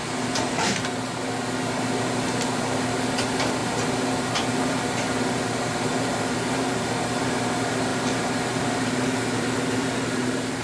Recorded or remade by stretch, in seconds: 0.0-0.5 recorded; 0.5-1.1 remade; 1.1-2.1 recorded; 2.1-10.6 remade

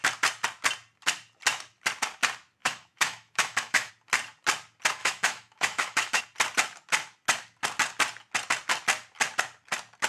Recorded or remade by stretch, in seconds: 0.0-2.6 recorded; 2.6-3.9 remade; 3.9-5.0 recorded; 5.0-6.2 remade; 6.2-10.1 recorded

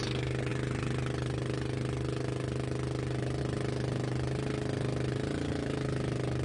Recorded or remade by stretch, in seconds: 0.0-6.4 recorded

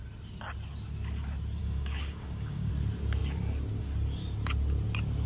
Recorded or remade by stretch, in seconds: 0.0-1.6 recorded; 1.6-2.7 remade; 2.7-5.3 recorded